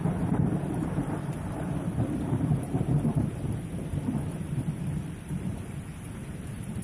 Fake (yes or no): yes